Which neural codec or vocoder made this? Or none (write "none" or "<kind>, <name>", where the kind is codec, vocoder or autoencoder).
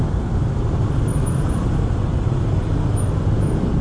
none